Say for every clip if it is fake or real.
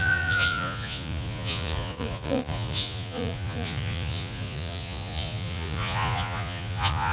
fake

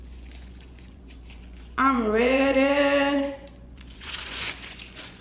fake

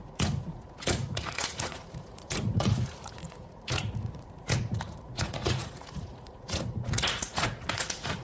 fake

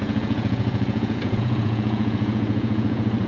fake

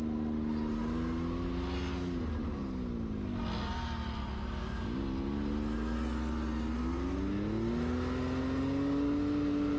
real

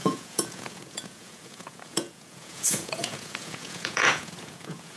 fake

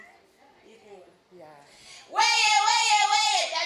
real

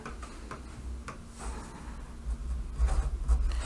real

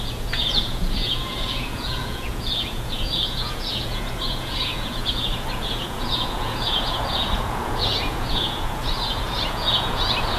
fake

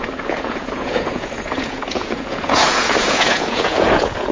fake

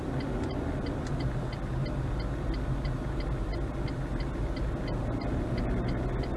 real